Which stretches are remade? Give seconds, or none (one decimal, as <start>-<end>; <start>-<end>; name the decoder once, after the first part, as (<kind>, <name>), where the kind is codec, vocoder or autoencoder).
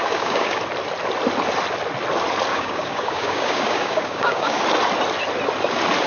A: 0.0-0.6 (codec, DAC); 2.5-4.6